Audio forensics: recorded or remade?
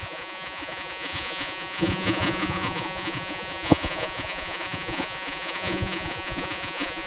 remade